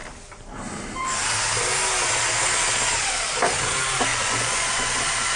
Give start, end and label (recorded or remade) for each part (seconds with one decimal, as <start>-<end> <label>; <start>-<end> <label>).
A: 0.0-4.1 recorded; 4.1-5.0 remade; 5.0-5.4 recorded